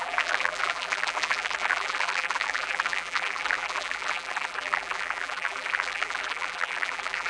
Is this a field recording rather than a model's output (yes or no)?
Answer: no